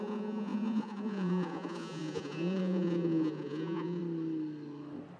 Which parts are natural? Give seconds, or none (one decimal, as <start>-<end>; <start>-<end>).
4.0-5.2